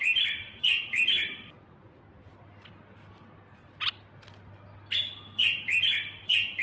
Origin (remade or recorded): recorded